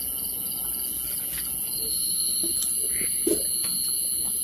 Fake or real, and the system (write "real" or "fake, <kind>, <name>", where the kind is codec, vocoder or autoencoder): real